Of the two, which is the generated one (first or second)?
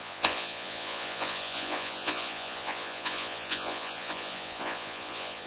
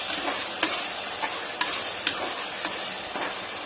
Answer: first